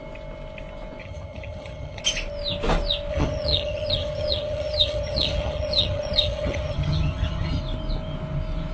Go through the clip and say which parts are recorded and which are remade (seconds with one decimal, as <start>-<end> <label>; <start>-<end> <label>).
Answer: 0.0-1.0 recorded; 1.0-2.0 remade; 2.0-3.1 recorded; 3.1-7.6 remade; 7.6-8.7 recorded